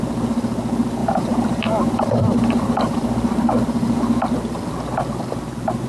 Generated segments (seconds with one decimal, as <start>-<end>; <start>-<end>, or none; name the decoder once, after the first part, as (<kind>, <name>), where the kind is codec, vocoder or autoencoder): 1.0-3.5 (vocoder, BigVGAN v2)